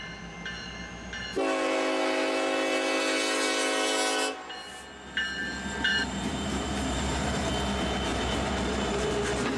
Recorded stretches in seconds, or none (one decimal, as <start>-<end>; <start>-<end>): 0.0-5.9; 7.5-8.1; 9.1-9.6